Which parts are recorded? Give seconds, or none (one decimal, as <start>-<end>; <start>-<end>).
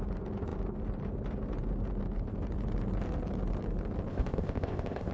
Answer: 0.0-4.1